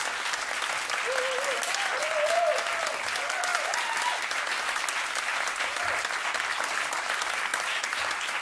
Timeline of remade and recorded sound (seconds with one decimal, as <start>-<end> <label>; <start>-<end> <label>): 0.0-7.5 recorded; 7.5-8.0 remade; 8.0-8.4 recorded